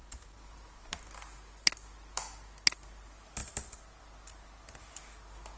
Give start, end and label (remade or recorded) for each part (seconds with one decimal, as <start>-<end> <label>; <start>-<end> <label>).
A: 0.0-1.0 remade; 1.0-5.6 recorded

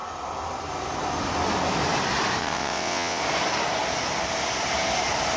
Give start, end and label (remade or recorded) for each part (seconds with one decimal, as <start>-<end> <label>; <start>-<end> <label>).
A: 0.0-2.4 recorded; 2.4-3.2 remade; 3.2-5.4 recorded

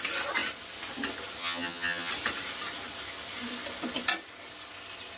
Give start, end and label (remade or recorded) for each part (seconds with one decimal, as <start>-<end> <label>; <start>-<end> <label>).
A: 0.0-1.4 recorded; 1.4-2.1 remade; 2.1-5.2 recorded

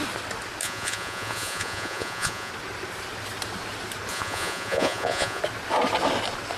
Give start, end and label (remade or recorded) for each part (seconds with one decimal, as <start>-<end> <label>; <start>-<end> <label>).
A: 0.0-0.6 recorded; 0.6-2.5 remade; 2.5-4.1 recorded; 4.1-5.4 remade; 5.4-6.6 recorded

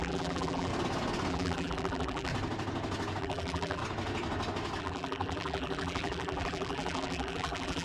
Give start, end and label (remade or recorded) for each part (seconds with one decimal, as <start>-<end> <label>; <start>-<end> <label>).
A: 0.0-0.7 remade; 0.7-1.3 recorded; 1.3-2.3 remade; 2.3-3.2 recorded; 3.2-3.8 remade; 3.8-4.8 recorded; 4.8-7.8 remade